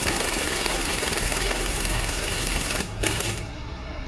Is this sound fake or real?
fake